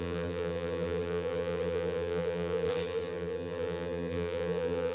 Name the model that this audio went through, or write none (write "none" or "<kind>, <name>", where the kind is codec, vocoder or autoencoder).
vocoder, BigVGAN v2